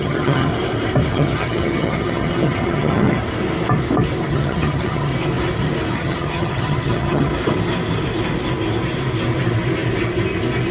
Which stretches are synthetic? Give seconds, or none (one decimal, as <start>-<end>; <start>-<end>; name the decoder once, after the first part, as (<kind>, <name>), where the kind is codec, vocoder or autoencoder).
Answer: 0.0-0.5 (vocoder, HiFi-GAN); 1.1-3.2; 4.3-5.1; 5.9-7.3